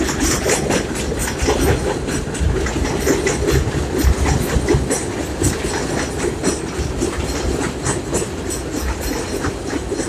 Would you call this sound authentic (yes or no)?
yes